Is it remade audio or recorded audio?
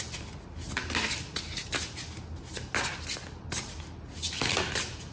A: recorded